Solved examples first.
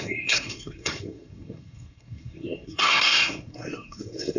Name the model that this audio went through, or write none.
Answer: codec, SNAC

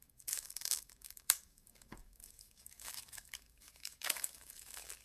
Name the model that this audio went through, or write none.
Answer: codec, DAC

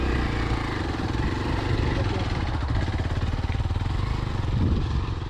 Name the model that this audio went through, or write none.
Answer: none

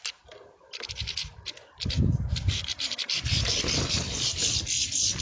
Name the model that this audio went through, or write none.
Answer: vocoder, BigVGAN v2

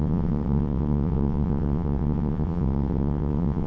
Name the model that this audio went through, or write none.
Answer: vocoder, WaveNeXt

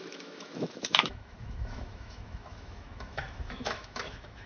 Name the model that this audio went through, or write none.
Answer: autoencoder, DAC-VAE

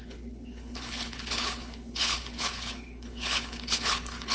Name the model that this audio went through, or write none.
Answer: codec, HILCodec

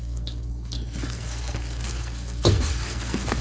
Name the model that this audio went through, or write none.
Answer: codec, SNAC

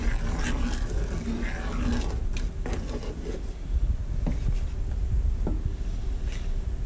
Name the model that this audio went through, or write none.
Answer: none